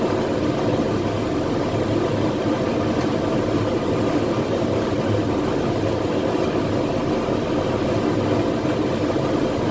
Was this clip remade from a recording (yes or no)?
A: no